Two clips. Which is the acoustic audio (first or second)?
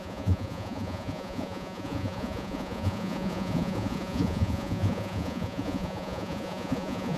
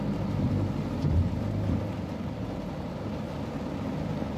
second